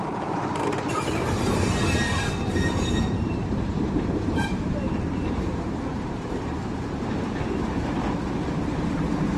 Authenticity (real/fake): fake